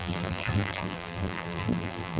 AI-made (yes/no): yes